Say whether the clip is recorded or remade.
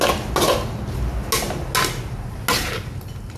recorded